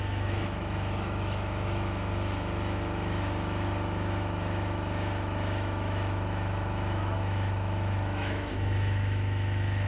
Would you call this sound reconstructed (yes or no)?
yes